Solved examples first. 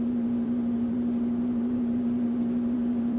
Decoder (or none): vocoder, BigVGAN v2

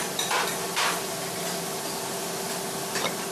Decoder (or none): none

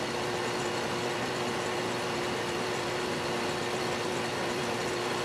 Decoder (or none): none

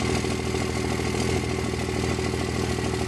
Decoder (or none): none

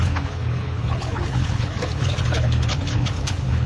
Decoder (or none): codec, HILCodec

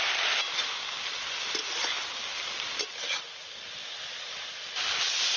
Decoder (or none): none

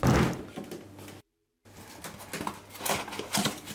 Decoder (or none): none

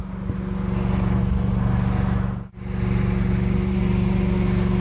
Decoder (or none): none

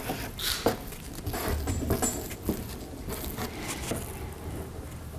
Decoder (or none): none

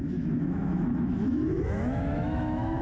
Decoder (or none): autoencoder, DAC-VAE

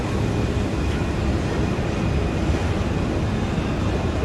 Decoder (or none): none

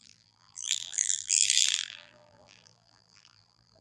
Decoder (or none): vocoder, BigVGAN v2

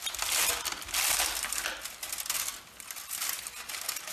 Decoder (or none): none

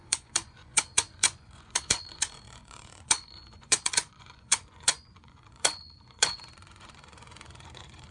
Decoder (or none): vocoder, Vocos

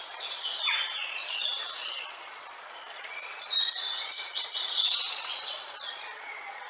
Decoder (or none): vocoder, Vocos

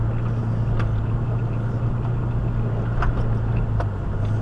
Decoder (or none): none